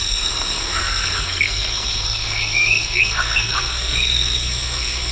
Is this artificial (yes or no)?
yes